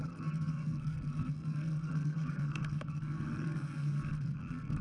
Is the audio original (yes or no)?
no